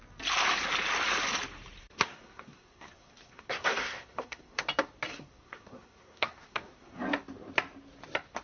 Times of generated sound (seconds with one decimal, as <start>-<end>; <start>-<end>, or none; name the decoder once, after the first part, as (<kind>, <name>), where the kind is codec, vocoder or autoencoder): 1.8-4.6 (codec, SNAC); 5.1-7.0